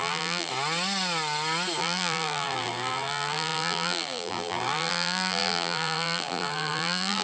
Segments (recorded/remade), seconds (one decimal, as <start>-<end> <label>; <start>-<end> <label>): 0.0-0.5 remade; 0.5-1.8 recorded; 1.8-7.2 remade